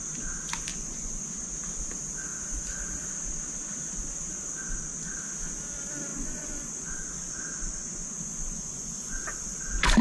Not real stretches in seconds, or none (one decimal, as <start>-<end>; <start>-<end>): 0.7-1.5; 6.1-6.9; 7.8-9.2